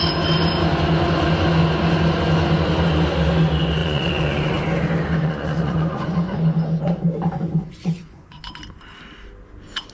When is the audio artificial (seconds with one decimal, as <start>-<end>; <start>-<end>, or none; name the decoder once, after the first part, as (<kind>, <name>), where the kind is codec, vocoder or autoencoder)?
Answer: 3.8-4.6 (vocoder, Vocos); 5.2-8.4